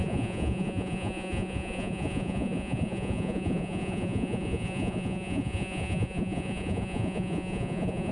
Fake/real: fake